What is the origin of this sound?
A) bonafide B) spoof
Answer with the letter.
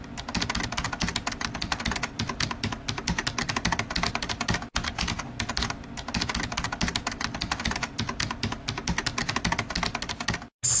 A